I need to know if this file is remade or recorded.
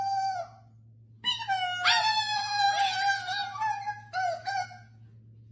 recorded